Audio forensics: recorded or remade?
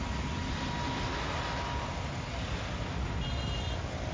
recorded